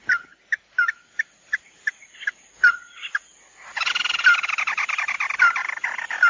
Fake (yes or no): no